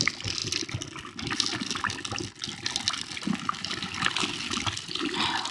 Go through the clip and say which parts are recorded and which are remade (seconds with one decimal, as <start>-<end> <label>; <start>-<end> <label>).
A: 0.0-5.5 recorded